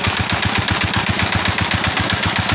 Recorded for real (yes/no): yes